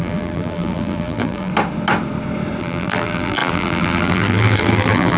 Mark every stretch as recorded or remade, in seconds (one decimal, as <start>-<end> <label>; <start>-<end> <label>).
0.0-1.5 remade; 1.5-2.6 recorded; 2.6-5.2 remade